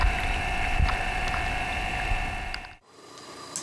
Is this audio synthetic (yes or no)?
no